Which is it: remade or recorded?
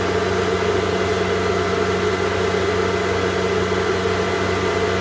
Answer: recorded